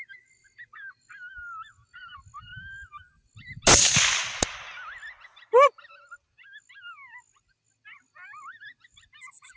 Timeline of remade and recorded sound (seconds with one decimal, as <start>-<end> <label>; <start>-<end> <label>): 0.0-9.6 recorded